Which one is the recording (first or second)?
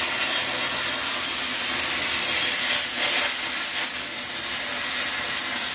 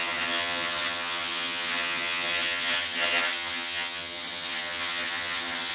first